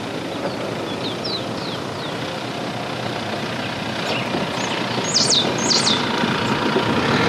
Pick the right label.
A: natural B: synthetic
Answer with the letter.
A